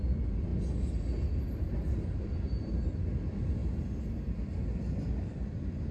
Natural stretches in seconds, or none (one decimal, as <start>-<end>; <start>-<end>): 0.5-1.5; 3.6-4.5